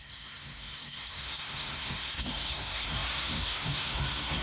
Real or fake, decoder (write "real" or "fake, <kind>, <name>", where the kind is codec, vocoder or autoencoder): fake, codec, SNAC